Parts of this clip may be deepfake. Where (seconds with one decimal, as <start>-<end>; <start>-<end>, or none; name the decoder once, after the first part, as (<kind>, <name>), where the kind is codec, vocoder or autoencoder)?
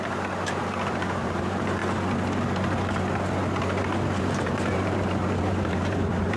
0.0-1.8 (vocoder, BigVGAN v2); 4.2-6.4